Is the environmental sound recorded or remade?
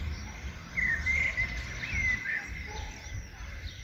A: remade